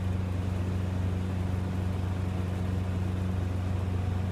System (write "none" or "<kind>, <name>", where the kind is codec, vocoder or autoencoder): none